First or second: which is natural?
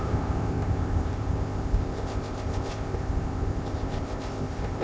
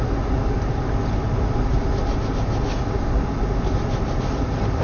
second